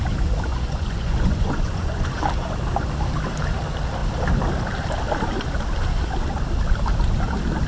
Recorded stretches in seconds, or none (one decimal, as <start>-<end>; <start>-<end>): 0.0-0.5; 2.2-7.7